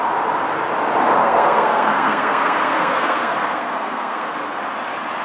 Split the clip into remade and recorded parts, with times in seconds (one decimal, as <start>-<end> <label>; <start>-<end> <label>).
0.0-1.2 recorded; 1.2-4.3 remade; 4.3-5.2 recorded